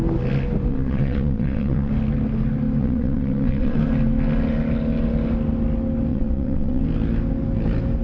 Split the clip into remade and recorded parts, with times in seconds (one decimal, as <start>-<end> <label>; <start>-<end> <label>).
0.0-0.7 recorded; 0.7-1.9 remade; 1.9-2.8 recorded; 2.8-3.8 remade; 3.8-6.1 recorded; 6.1-6.8 remade; 6.8-8.0 recorded